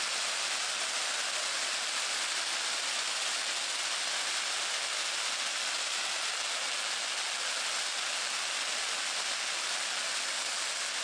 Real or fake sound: real